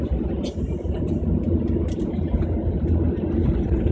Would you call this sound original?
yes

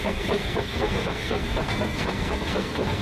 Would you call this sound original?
no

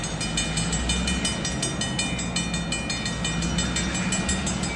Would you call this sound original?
yes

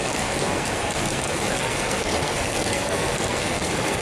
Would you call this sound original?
no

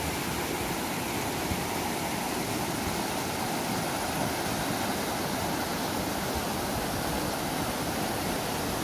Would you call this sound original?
yes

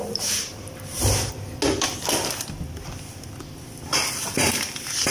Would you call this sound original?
yes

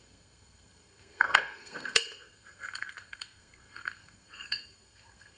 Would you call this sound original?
no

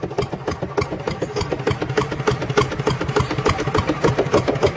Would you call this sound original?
yes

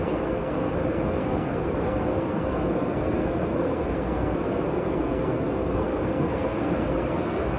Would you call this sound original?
no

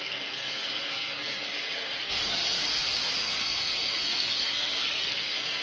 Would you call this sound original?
no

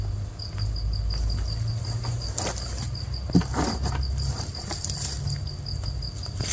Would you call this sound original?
yes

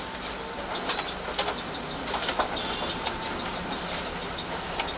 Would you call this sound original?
yes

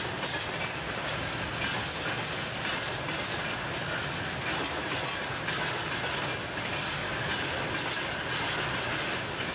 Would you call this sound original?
yes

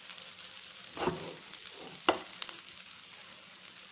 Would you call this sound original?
yes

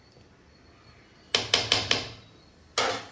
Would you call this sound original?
yes